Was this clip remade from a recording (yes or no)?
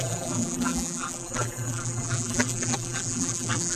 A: yes